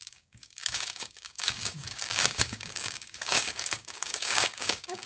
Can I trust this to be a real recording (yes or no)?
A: no